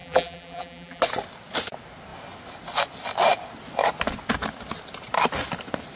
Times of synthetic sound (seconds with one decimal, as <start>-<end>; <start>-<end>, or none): 0.0-1.0